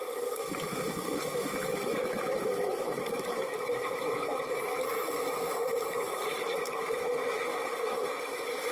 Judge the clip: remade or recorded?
remade